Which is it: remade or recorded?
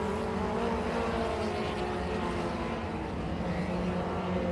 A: recorded